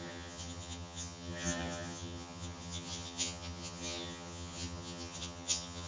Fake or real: fake